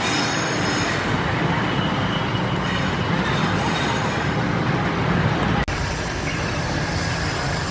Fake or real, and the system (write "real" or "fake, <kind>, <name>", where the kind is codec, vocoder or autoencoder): real